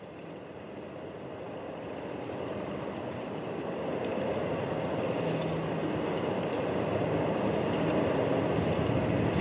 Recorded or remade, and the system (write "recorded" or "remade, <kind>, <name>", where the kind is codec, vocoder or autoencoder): recorded